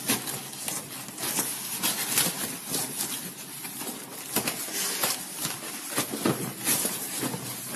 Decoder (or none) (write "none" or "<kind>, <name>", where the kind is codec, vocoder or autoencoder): none